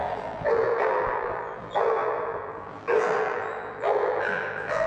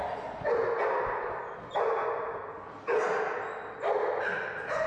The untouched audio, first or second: second